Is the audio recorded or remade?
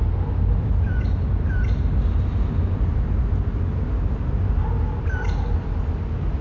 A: recorded